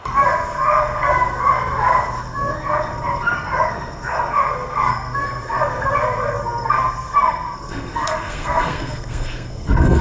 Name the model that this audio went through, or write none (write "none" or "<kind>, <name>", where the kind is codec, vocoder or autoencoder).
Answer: codec, SNAC